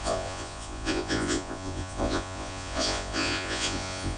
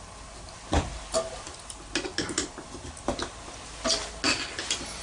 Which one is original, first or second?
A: second